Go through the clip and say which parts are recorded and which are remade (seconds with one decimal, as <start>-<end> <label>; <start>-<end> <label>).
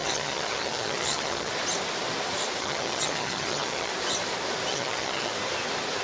0.0-1.5 remade; 1.5-2.6 recorded; 2.6-3.9 remade; 3.9-4.7 recorded; 4.7-5.3 remade; 5.3-6.0 recorded